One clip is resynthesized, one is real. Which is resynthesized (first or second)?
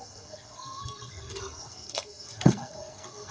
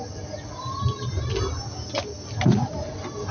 first